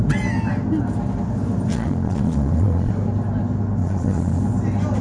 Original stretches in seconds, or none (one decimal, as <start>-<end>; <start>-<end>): 0.0-1.7; 2.9-3.8; 4.4-5.0